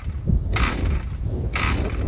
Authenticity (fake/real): real